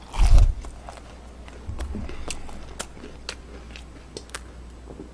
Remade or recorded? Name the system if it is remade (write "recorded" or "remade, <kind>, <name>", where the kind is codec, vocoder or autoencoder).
recorded